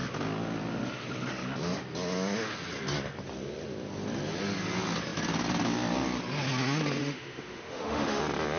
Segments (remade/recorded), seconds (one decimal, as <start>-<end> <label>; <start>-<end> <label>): 0.0-7.0 recorded; 7.0-8.2 remade; 8.2-8.6 recorded